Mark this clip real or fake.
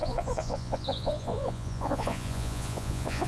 fake